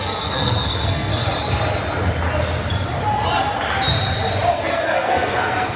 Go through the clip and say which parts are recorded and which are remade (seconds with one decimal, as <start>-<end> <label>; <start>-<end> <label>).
0.0-1.1 remade; 1.1-4.5 recorded; 4.5-5.8 remade